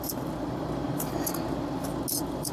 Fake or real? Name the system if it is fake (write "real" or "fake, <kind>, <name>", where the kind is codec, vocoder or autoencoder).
real